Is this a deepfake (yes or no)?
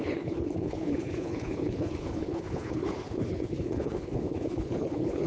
yes